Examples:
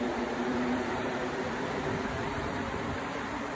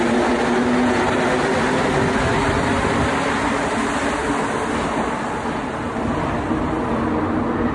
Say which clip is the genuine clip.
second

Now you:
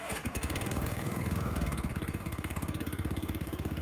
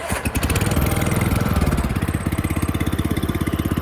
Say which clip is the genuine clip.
second